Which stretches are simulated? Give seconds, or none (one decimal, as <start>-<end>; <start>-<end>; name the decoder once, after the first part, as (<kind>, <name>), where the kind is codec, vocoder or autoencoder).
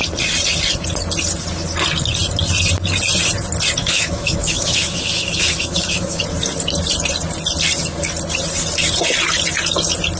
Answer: 3.8-6.2 (autoencoder, DAC-VAE)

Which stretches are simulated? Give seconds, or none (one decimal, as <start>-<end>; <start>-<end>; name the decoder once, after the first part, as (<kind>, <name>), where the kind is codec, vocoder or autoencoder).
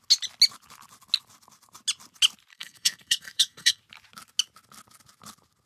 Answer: 2.5-3.8 (codec, SNAC)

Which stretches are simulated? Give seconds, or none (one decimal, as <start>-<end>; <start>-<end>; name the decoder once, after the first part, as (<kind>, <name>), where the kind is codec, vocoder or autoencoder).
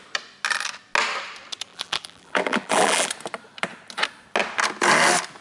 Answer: 1.7-3.1 (vocoder, BigVGAN v2)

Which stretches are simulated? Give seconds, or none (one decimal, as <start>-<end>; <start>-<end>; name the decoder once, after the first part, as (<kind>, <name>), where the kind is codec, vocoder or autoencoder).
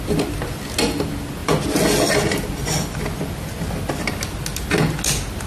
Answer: none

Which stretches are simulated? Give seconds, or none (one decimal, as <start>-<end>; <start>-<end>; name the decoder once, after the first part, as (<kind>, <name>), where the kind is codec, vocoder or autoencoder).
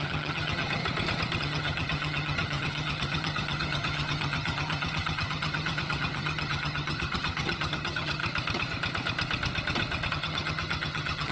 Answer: 0.0-0.8 (vocoder, HiFi-GAN); 1.4-8.2; 10.1-11.3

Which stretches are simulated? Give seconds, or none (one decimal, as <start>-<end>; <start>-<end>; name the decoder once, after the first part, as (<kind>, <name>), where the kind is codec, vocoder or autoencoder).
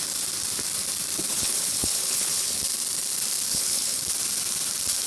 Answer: 1.3-2.6 (codec, HILCodec); 3.5-4.0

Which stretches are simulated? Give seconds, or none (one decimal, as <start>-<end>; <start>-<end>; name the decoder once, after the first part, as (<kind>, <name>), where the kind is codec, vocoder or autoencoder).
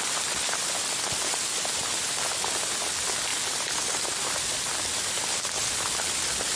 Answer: none